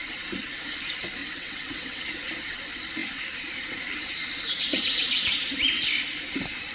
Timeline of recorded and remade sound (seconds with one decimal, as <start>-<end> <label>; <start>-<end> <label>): 0.0-1.2 recorded; 1.2-2.0 remade; 2.0-6.7 recorded